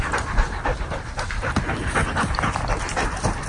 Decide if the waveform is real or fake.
real